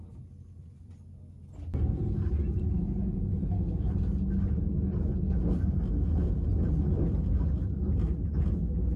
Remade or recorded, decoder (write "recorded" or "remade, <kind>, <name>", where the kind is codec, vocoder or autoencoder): recorded